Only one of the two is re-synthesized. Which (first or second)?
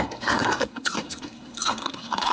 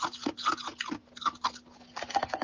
first